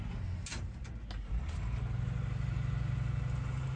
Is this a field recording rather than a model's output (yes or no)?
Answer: yes